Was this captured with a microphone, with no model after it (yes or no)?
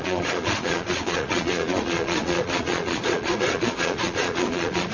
no